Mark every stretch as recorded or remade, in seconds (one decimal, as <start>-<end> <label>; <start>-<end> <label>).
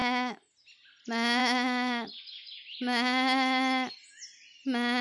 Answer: 0.0-5.0 recorded